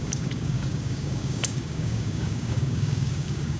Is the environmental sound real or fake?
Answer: fake